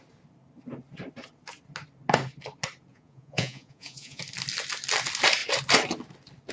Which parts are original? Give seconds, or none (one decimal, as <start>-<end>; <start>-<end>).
0.0-2.9; 4.2-6.5